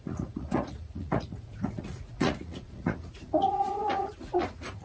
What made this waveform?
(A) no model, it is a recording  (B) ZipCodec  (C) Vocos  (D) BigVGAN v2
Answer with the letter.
C